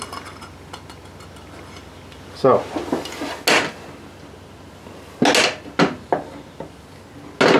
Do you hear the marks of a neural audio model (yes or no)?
no